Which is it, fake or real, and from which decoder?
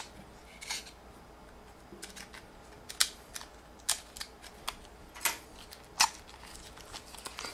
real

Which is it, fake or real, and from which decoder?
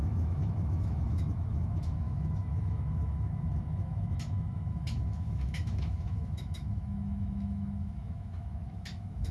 fake, autoencoder, DAC-VAE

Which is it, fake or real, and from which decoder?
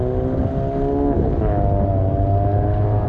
real